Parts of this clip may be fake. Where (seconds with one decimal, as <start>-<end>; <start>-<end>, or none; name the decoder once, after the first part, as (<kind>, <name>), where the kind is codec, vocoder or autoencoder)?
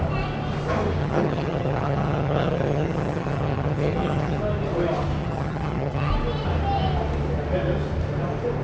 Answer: 1.0-4.4 (vocoder, HiFi-GAN); 5.2-6.1